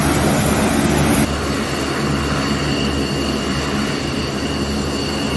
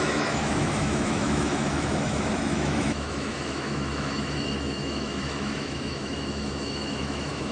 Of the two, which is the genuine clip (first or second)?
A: first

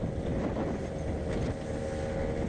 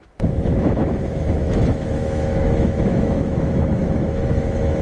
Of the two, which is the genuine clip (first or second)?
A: first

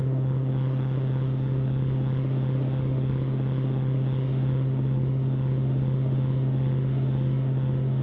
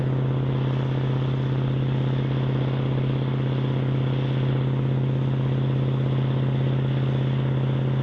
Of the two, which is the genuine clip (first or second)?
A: second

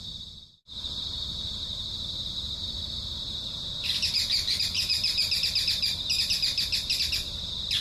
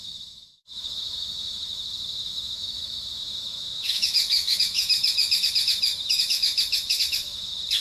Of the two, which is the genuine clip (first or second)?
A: first